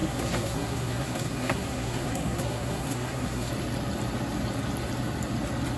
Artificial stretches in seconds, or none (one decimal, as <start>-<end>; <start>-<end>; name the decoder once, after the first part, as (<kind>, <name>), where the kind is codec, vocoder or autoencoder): 0.0-3.5 (codec, SNAC)